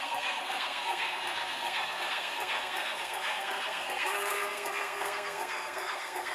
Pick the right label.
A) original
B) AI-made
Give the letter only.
B